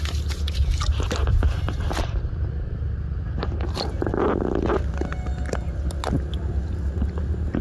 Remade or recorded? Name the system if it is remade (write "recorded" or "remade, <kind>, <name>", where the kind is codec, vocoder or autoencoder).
recorded